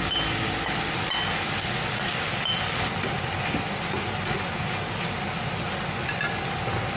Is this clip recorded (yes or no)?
yes